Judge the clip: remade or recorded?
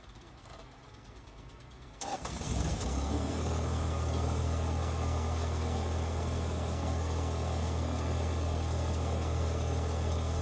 remade